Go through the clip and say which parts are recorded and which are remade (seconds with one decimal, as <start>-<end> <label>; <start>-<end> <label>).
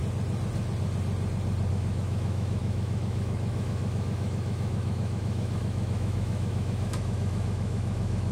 0.0-1.7 recorded; 1.7-8.3 remade